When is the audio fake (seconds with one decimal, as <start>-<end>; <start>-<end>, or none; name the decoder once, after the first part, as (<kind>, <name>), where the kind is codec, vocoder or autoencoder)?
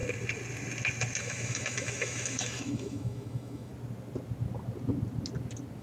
1.2-3.7 (autoencoder, DAC-VAE)